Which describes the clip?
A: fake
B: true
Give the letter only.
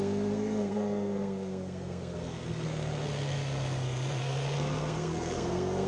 A